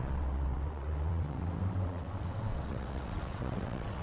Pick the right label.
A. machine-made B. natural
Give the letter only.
A